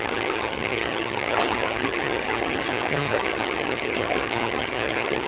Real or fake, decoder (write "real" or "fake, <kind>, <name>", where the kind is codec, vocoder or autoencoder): fake, vocoder, HiFi-GAN